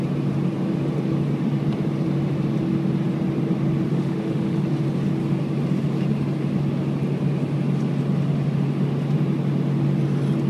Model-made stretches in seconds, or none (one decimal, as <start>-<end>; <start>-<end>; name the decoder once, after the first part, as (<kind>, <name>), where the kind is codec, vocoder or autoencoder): 3.9-4.6 (autoencoder, DAC-VAE)